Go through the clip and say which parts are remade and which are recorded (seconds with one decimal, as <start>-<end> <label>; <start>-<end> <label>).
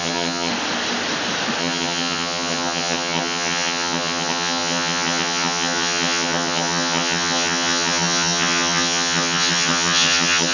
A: 0.0-0.5 remade; 0.5-1.6 recorded; 1.6-10.5 remade